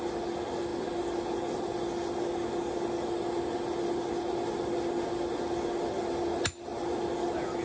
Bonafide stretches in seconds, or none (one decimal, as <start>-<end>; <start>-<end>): 0.0-7.6